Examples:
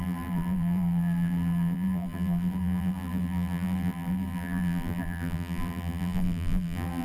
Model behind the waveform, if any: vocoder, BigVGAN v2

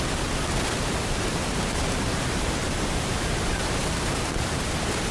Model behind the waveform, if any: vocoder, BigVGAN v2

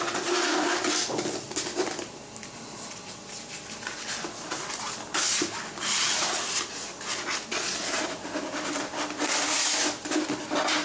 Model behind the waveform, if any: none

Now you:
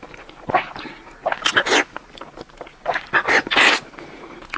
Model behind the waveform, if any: none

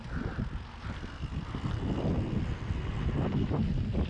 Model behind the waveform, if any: none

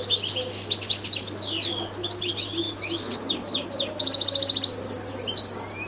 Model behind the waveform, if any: vocoder, BigVGAN v2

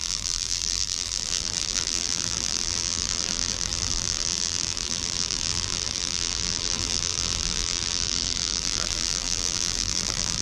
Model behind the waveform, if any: vocoder, BigVGAN v2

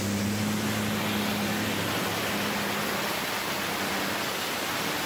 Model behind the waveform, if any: none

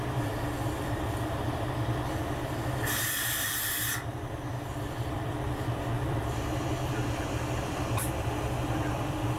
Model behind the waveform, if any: vocoder, BigVGAN v2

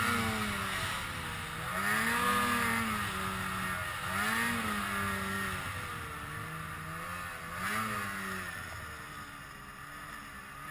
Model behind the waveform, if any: none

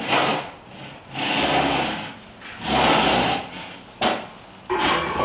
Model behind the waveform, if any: none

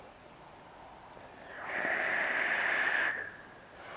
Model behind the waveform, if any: none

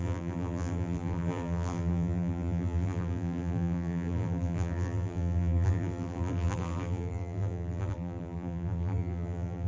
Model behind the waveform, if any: vocoder, BigVGAN v2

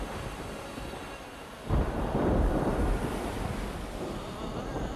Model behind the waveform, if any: vocoder, BigVGAN v2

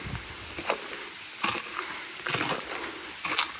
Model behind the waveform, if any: none